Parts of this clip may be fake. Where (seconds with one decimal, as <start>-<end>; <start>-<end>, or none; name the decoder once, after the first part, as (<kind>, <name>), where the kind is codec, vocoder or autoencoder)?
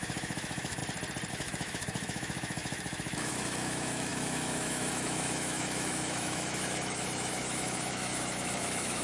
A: 0.0-0.8 (autoencoder, DAC-VAE); 1.3-9.0